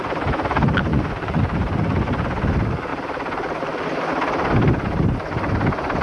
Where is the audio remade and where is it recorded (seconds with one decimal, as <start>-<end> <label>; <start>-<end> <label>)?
0.0-0.9 recorded; 0.9-1.4 remade; 1.4-6.0 recorded